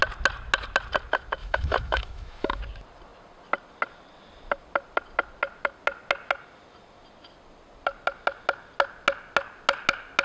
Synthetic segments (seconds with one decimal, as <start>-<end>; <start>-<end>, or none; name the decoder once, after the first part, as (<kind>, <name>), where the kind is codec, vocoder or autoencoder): 1.4-2.6 (autoencoder, DAC-VAE)

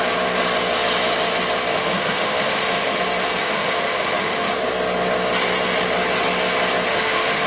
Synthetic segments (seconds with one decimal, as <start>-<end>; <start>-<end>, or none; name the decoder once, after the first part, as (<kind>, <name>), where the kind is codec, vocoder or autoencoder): 1.7-3.0 (autoencoder, DAC-VAE); 3.4-4.5; 6.9-7.5

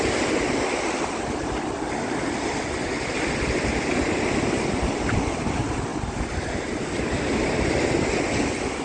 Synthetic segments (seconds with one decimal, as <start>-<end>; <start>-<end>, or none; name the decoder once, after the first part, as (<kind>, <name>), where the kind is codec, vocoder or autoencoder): none

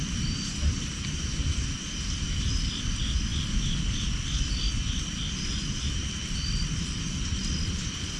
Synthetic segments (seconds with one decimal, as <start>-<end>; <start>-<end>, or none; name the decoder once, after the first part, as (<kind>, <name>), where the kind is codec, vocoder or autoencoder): none

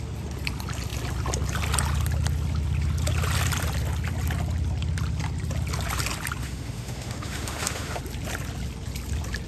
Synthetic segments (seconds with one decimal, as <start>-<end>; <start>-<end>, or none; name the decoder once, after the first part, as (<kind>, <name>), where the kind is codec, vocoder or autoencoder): 6.4-8.0 (autoencoder, DAC-VAE)